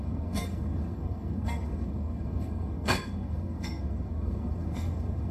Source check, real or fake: fake